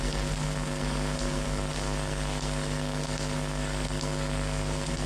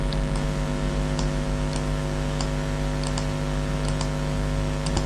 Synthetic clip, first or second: first